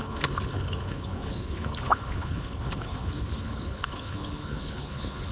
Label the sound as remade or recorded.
remade